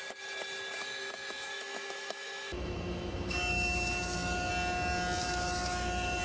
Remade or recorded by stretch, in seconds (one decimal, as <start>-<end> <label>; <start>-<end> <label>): 0.0-0.8 recorded; 0.8-4.5 remade; 4.5-5.2 recorded; 5.2-6.2 remade